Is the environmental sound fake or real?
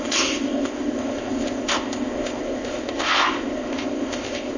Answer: fake